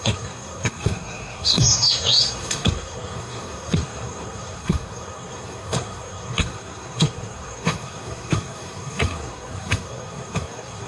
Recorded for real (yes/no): no